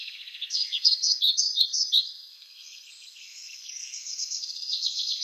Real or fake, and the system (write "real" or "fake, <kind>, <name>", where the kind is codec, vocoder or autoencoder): fake, codec, SNAC